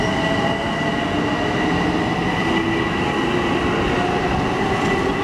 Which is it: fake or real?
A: real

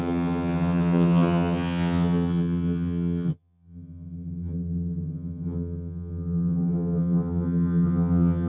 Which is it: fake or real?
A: fake